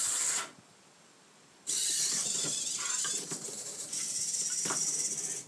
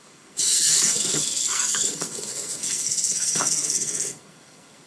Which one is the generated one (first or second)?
second